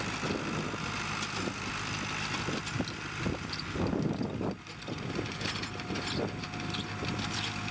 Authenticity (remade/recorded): recorded